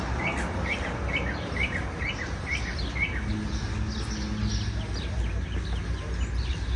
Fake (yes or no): no